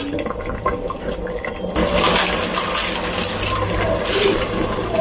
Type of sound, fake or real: real